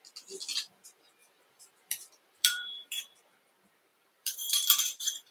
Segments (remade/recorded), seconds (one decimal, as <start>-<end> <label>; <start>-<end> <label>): 0.0-1.2 recorded; 1.2-3.1 remade; 3.1-3.9 recorded; 3.9-5.3 remade